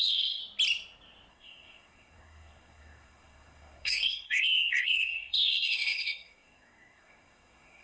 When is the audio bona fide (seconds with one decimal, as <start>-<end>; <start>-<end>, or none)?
0.4-1.3